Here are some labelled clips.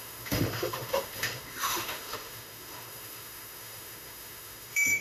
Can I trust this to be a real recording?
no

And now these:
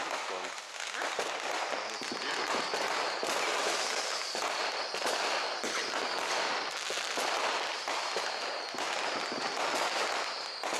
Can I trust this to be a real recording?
yes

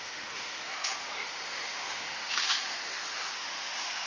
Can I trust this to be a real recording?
no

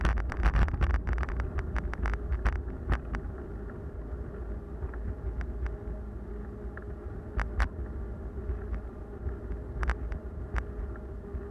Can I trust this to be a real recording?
yes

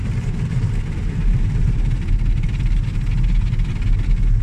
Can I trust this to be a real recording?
yes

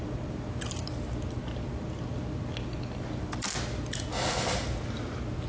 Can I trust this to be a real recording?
yes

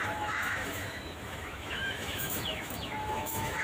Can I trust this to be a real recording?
no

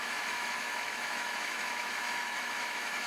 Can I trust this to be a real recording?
no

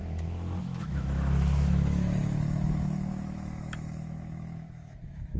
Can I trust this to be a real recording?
no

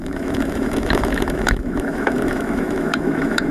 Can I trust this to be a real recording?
no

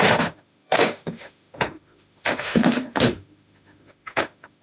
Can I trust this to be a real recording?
no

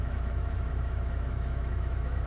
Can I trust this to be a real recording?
no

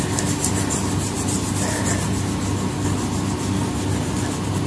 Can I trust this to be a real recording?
yes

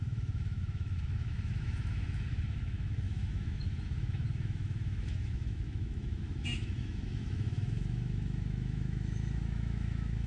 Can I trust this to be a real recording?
no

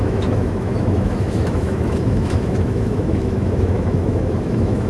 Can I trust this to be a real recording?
no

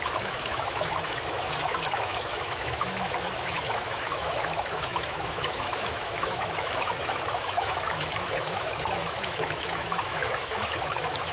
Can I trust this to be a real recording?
no